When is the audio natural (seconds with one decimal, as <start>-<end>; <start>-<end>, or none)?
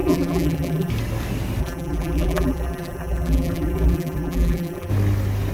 0.9-1.6; 4.9-5.5